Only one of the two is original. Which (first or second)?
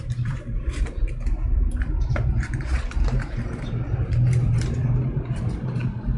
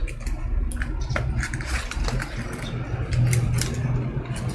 second